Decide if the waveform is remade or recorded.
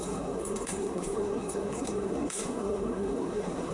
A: remade